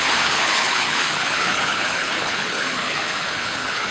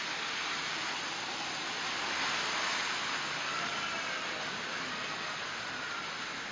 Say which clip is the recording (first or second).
second